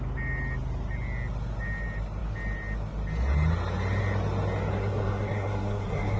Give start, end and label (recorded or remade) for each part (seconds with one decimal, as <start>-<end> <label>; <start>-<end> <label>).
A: 0.0-4.7 recorded; 4.7-6.2 remade